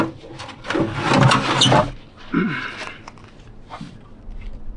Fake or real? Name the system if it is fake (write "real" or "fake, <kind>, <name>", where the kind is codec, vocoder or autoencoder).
real